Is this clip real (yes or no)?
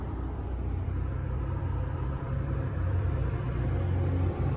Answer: no